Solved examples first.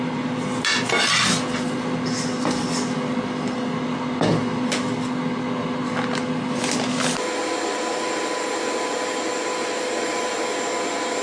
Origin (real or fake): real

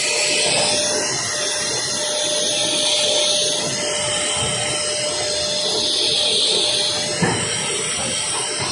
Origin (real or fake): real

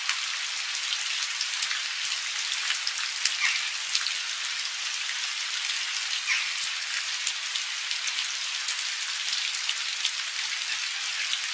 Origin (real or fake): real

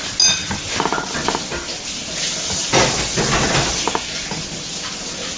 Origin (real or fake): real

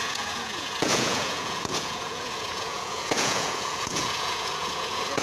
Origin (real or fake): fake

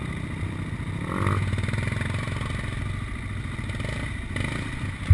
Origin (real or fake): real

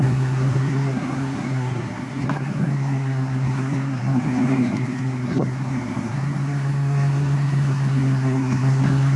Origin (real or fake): fake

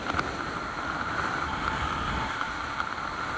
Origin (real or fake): real